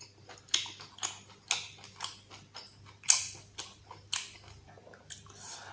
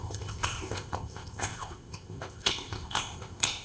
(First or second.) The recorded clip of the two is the first